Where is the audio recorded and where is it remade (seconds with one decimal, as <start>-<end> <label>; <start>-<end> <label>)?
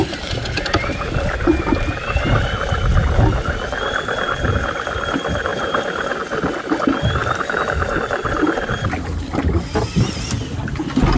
0.0-5.5 recorded; 5.5-6.2 remade; 6.2-11.2 recorded